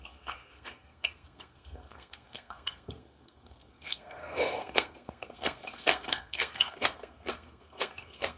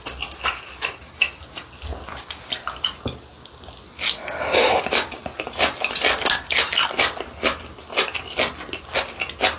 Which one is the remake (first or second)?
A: first